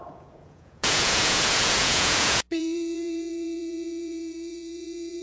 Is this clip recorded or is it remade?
remade